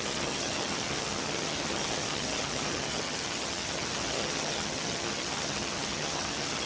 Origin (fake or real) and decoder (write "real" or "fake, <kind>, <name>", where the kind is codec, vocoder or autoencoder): fake, vocoder, HiFi-GAN